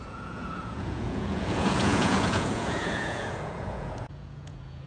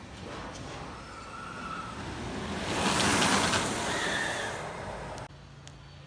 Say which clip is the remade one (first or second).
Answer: first